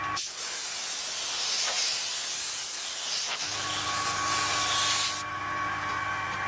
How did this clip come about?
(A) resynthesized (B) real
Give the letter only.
B